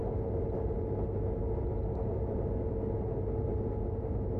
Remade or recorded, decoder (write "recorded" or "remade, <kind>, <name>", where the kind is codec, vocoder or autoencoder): recorded